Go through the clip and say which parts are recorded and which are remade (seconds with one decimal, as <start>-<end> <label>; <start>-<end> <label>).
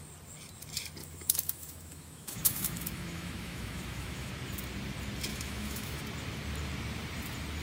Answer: 0.0-1.0 recorded; 1.0-4.3 remade; 4.3-5.3 recorded; 5.3-6.0 remade; 6.0-7.6 recorded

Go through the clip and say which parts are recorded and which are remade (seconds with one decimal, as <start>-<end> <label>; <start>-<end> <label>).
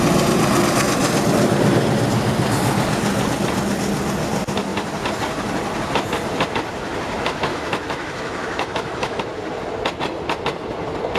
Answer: 0.0-7.5 recorded; 7.5-9.2 remade; 9.2-11.2 recorded